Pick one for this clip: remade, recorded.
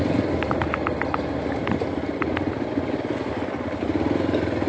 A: recorded